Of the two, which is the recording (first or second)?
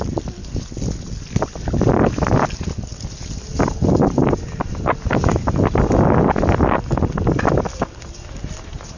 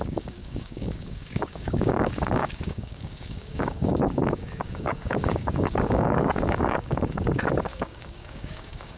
first